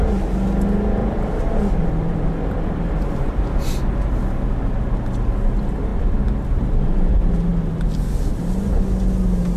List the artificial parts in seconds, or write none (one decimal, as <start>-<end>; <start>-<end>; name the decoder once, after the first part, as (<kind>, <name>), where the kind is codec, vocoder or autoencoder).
1.0-2.9 (vocoder, BigVGAN v2); 5.9-6.7